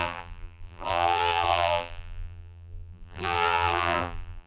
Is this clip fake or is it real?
fake